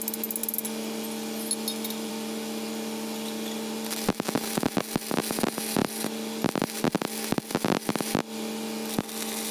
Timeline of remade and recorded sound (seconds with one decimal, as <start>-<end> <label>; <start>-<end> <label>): 0.0-9.5 recorded